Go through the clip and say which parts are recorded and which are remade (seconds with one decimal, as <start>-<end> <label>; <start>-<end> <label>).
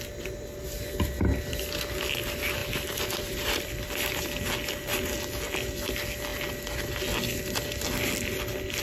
0.0-2.6 recorded; 2.6-4.2 remade; 4.2-8.8 recorded